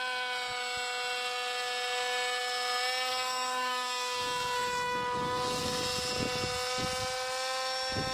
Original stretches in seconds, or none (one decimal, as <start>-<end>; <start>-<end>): 0.0-3.1; 5.6-8.1